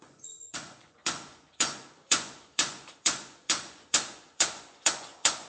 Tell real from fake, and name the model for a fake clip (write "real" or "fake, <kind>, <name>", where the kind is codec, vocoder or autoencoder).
fake, vocoder, Vocos